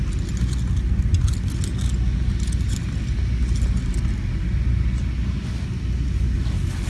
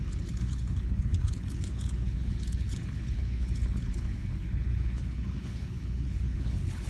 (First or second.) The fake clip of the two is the second